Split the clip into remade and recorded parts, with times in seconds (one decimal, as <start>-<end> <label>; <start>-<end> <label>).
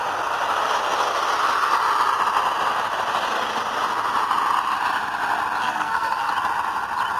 0.0-5.6 recorded; 5.6-6.3 remade; 6.3-7.2 recorded